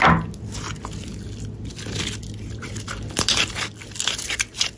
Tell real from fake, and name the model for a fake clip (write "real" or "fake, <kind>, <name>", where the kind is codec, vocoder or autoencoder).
real